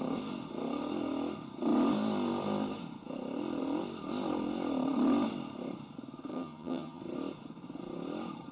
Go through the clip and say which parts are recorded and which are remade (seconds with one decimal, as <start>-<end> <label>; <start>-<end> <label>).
0.0-6.3 recorded; 6.3-7.0 remade; 7.0-8.5 recorded